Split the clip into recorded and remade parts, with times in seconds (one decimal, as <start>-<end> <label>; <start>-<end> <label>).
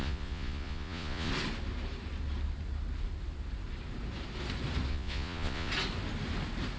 0.0-1.3 remade; 1.3-4.9 recorded; 4.9-5.7 remade; 5.7-6.8 recorded